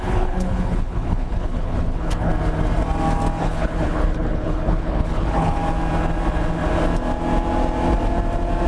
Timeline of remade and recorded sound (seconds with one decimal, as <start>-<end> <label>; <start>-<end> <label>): 0.0-2.3 remade; 2.3-3.4 recorded; 3.4-5.6 remade; 5.6-8.7 recorded